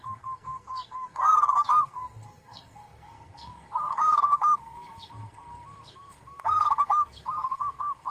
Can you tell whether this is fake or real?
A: fake